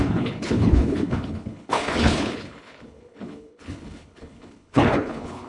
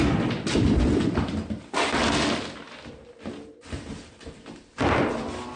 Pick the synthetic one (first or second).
first